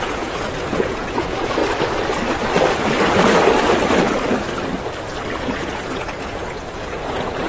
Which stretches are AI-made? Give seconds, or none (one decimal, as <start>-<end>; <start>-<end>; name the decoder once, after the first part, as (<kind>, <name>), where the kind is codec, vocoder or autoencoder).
0.0-1.6 (vocoder, Vocos); 5.4-7.5